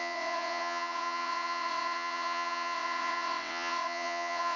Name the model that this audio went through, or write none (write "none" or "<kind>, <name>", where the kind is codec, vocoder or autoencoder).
vocoder, WaveNeXt